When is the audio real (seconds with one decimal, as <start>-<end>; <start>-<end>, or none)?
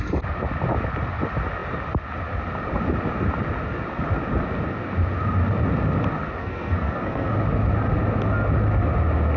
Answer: 0.0-6.4; 7.3-9.4